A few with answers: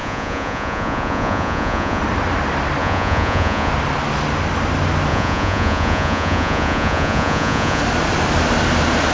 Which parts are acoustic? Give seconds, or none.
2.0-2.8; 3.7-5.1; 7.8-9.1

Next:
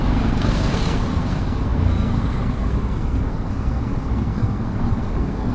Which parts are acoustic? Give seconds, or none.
none

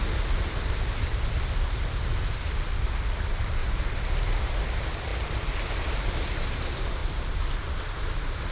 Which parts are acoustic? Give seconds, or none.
0.0-3.6; 4.1-5.1; 5.6-7.0; 7.8-8.5